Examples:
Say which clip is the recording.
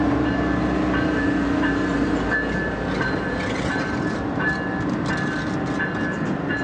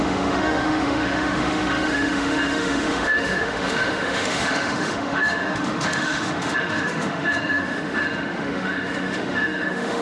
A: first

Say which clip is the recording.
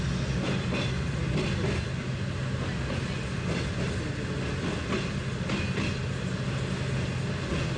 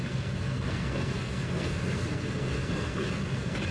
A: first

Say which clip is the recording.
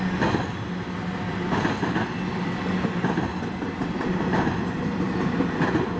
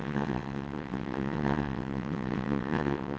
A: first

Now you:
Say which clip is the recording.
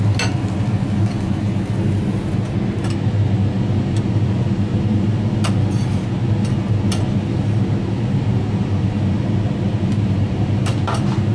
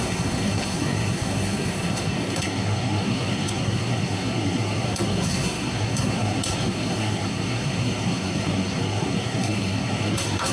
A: first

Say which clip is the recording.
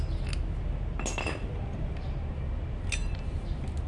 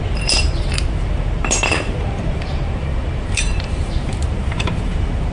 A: first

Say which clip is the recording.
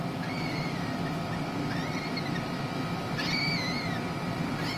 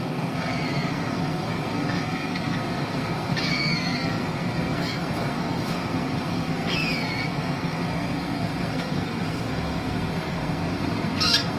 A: first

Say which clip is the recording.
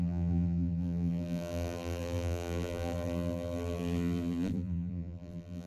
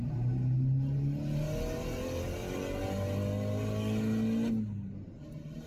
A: second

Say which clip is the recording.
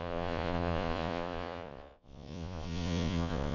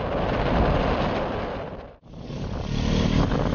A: second